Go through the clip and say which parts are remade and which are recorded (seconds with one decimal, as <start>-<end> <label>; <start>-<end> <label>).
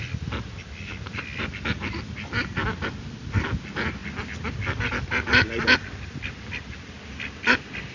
0.0-7.9 recorded